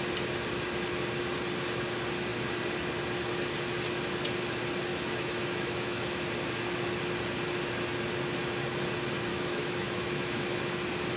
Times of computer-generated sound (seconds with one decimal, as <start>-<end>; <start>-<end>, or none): 4.9-6.3; 9.3-10.6